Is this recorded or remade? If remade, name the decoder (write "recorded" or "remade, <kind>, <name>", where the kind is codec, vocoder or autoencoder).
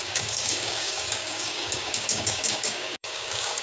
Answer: remade, codec, DAC